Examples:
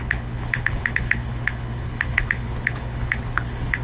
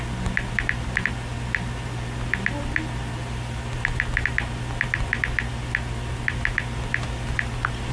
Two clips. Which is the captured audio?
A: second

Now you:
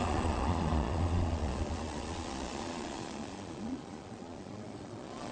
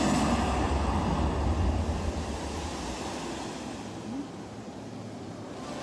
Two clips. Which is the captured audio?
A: second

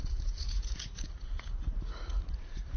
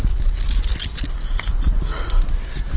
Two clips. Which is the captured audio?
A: second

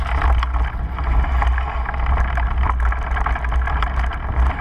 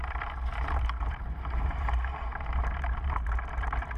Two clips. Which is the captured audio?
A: first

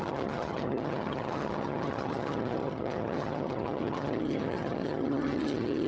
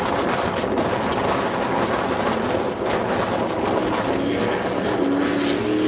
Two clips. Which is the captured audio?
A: second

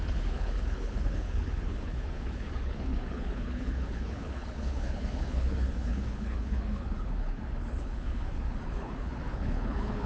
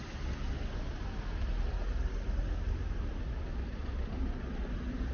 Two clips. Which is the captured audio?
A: second